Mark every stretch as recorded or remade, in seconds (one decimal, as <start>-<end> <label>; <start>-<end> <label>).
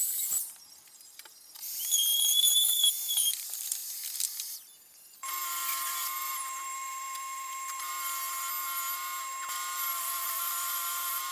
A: 0.0-3.8 remade; 3.8-4.5 recorded; 4.5-7.9 remade; 7.9-10.0 recorded; 10.0-11.3 remade